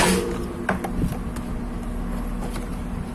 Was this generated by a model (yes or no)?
no